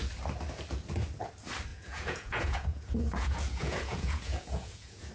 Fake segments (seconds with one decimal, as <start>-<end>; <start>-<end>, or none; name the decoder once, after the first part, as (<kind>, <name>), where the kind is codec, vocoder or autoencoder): 1.7-5.1 (vocoder, Vocos)